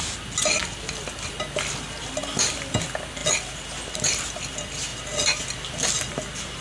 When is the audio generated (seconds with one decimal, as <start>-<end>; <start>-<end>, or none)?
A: none